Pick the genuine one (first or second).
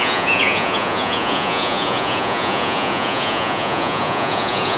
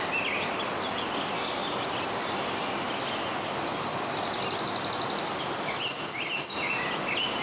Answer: second